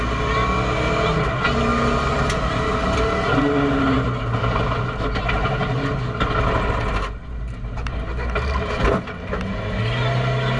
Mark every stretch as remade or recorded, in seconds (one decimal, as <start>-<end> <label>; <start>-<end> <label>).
0.0-10.6 recorded